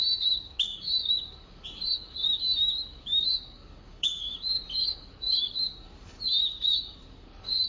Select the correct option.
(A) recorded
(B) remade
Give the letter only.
B